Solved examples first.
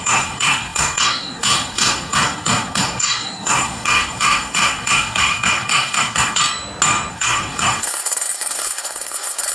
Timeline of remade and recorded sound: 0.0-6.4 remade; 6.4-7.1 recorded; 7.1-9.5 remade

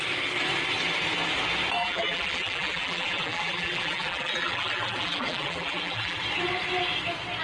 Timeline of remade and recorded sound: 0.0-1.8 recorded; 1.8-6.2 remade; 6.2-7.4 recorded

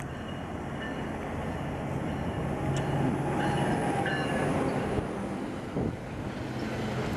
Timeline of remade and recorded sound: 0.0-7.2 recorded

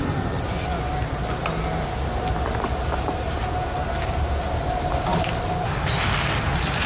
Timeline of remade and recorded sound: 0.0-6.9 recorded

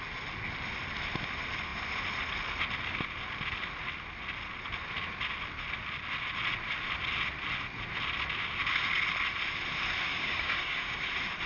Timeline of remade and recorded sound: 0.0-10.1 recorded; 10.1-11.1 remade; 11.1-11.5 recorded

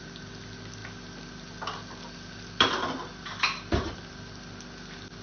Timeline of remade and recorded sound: 0.0-5.2 recorded